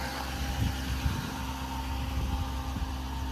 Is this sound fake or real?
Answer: real